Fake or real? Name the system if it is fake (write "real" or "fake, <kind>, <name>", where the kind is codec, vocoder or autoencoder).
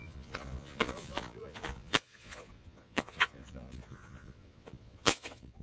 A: fake, vocoder, Vocos